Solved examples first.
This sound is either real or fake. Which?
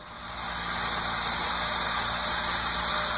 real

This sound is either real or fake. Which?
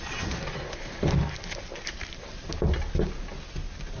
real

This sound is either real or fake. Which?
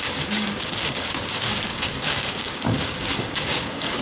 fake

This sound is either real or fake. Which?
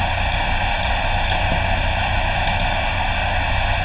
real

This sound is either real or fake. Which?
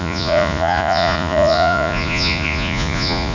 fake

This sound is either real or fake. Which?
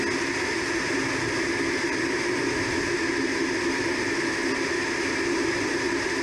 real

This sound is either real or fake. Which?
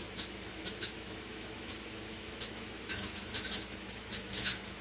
fake